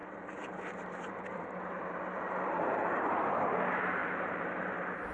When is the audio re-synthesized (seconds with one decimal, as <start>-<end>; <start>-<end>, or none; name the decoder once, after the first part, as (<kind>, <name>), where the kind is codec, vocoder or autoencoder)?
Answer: 0.0-3.1 (vocoder, BigVGAN v2); 4.0-4.5